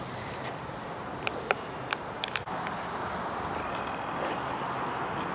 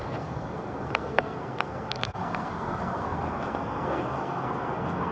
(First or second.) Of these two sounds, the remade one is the second